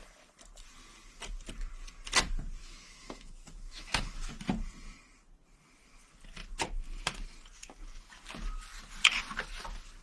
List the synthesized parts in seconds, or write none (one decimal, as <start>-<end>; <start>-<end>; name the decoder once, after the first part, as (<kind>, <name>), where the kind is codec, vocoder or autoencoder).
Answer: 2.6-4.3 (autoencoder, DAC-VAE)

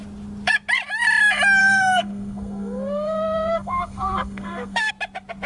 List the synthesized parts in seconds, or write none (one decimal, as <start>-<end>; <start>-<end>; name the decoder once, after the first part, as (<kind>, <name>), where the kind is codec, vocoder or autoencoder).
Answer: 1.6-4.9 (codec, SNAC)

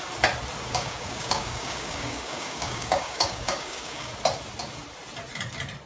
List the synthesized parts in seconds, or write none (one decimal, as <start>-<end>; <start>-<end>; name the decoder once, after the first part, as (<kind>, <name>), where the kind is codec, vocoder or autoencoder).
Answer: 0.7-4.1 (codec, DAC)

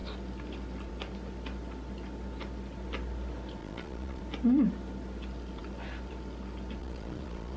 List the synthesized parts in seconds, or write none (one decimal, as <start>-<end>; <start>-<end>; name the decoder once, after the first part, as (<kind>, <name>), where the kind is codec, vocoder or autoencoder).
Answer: 3.6-4.2 (vocoder, Vocos); 6.8-7.6